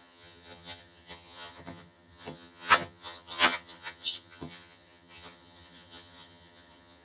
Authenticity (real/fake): fake